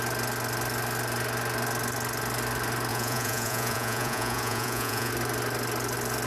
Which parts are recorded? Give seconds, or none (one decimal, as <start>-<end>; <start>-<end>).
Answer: 0.0-2.9; 5.1-6.3